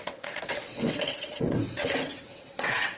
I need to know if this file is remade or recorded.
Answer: remade